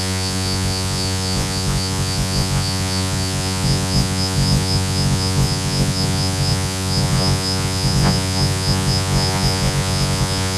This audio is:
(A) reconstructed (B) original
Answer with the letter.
A